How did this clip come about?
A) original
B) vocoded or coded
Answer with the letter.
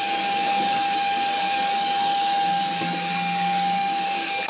B